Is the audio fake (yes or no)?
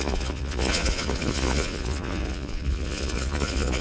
yes